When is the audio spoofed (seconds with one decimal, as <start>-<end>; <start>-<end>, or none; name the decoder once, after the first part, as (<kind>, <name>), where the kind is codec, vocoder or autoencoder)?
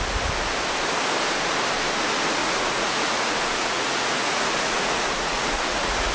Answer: 2.4-6.1 (vocoder, Vocos)